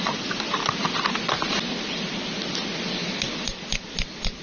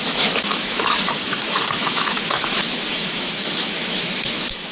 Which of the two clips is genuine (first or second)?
first